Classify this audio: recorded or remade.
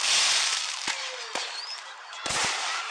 recorded